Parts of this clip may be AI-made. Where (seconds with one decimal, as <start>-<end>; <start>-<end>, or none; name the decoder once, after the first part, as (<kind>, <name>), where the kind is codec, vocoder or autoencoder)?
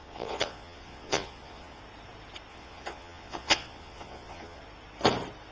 0.0-1.8 (vocoder, Vocos); 2.5-4.6